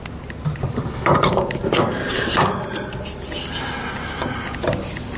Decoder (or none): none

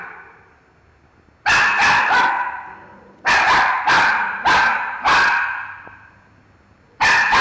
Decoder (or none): none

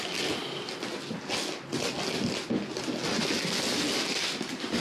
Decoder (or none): none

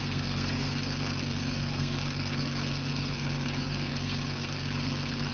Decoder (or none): codec, SNAC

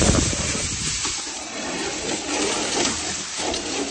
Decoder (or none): vocoder, BigVGAN v2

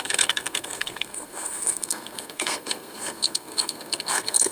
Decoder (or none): codec, SNAC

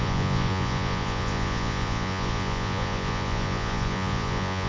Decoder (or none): vocoder, Vocos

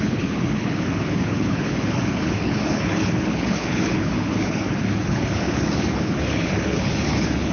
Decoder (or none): codec, HILCodec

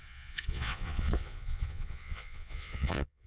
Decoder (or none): vocoder, Vocos